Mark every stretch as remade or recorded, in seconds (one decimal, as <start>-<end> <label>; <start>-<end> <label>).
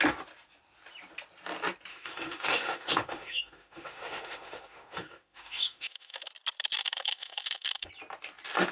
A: 0.0-1.9 recorded; 1.9-6.3 remade; 6.3-6.8 recorded; 6.8-7.9 remade; 7.9-8.7 recorded